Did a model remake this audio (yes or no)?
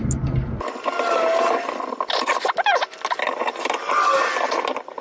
no